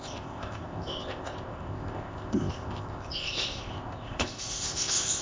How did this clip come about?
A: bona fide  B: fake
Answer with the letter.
B